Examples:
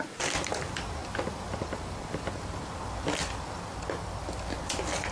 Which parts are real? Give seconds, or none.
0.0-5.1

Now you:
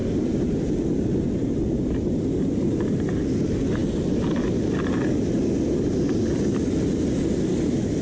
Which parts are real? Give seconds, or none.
3.1-8.0

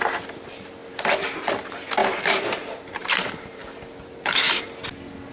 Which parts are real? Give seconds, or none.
0.0-2.0; 4.3-5.3

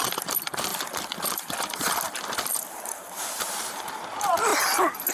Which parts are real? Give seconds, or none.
0.0-0.7; 3.8-5.1

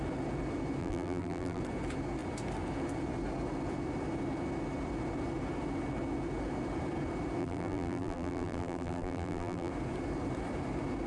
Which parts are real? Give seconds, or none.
0.0-0.8; 1.6-7.4; 9.7-11.1

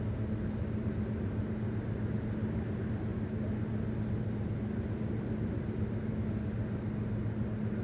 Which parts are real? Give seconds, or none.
0.0-7.8